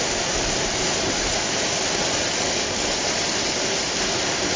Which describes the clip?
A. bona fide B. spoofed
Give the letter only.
A